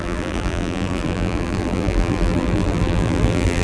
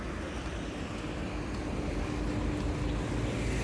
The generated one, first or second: first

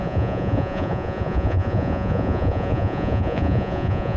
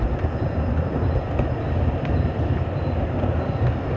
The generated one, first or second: first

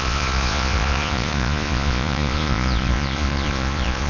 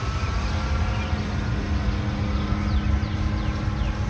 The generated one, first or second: first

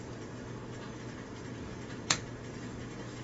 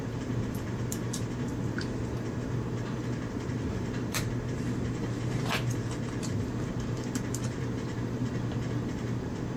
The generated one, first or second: second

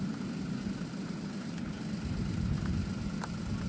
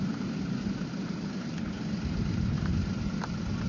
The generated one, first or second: second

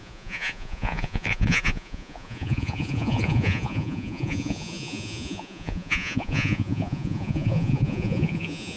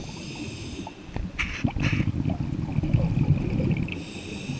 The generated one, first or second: first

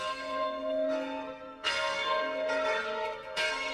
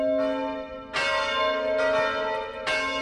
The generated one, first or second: first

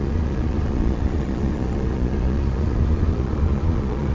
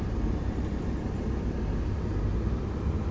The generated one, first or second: first